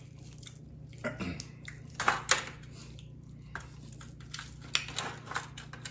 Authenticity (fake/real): real